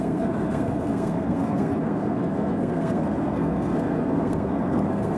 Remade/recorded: remade